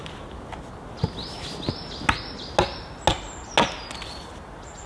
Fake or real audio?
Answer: real